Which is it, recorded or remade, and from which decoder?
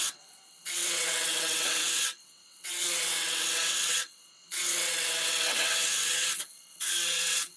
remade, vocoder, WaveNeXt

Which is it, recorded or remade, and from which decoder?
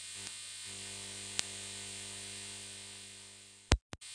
recorded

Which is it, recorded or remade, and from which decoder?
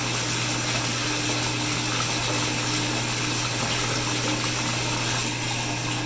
recorded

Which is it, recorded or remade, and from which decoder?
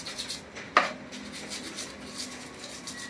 recorded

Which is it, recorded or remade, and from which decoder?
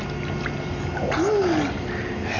recorded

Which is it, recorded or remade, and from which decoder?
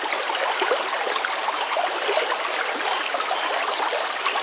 recorded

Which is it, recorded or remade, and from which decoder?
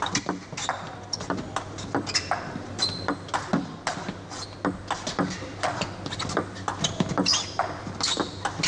recorded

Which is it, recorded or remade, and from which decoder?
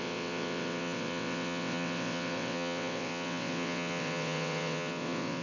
remade, vocoder, WaveNeXt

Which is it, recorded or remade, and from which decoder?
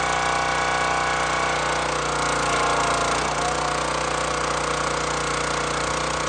recorded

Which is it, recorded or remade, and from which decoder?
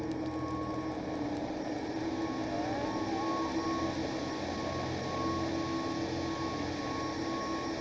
recorded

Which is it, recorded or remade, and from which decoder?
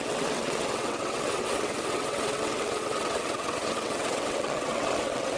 remade, vocoder, WaveNeXt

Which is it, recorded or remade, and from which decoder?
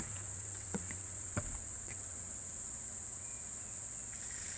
remade, vocoder, WaveNeXt